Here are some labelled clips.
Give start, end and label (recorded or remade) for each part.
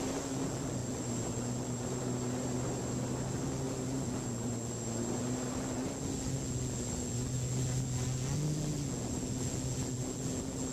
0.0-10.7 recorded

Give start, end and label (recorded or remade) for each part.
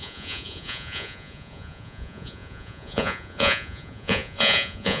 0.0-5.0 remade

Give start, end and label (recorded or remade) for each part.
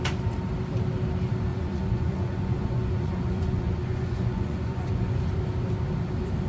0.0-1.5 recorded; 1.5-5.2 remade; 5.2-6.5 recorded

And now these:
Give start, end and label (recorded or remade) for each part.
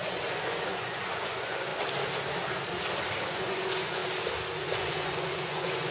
0.0-1.7 remade; 1.7-3.3 recorded; 3.3-4.0 remade; 4.0-4.6 recorded; 4.6-5.9 remade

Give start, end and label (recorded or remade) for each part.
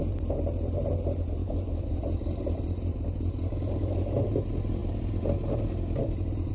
0.0-1.4 recorded; 1.4-2.0 remade; 2.0-6.5 recorded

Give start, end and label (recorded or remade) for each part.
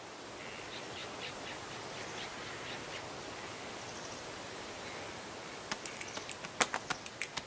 0.0-7.5 recorded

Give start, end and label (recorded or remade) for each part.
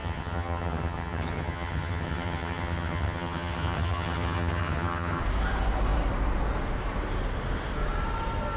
0.0-5.2 remade; 5.2-8.6 recorded